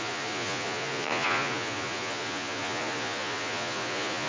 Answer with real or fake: fake